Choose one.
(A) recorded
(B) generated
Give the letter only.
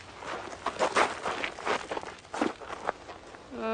A